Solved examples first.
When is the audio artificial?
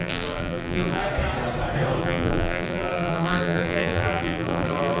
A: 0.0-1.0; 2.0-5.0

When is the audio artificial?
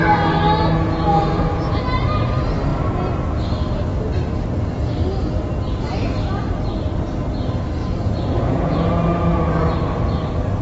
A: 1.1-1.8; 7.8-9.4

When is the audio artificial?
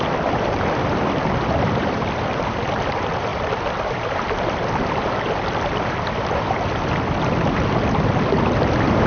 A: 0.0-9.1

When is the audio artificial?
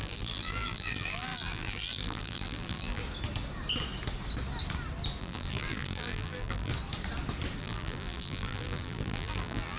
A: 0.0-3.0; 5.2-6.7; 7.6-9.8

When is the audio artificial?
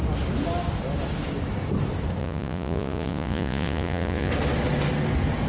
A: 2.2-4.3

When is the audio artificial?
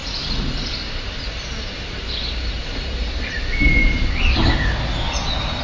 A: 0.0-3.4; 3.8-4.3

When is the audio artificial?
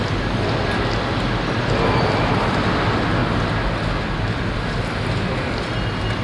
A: none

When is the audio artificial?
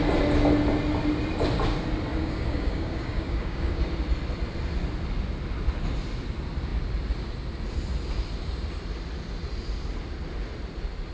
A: 2.1-3.8